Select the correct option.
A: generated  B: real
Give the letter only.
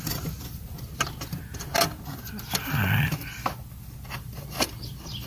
B